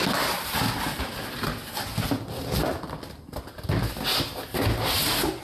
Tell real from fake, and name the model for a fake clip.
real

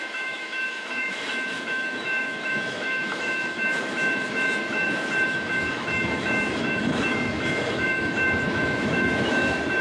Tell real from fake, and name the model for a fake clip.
fake, autoencoder, DAC-VAE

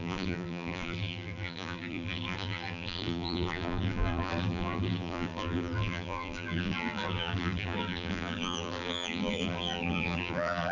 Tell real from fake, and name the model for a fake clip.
fake, vocoder, BigVGAN v2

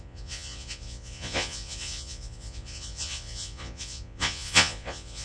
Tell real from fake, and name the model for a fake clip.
fake, vocoder, Vocos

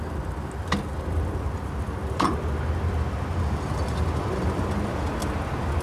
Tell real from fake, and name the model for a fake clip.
real